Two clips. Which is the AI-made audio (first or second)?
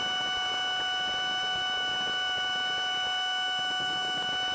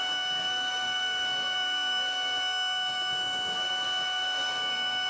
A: second